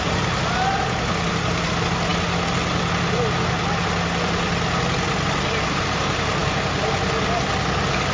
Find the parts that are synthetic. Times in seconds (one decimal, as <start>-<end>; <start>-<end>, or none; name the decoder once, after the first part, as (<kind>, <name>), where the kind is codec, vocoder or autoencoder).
none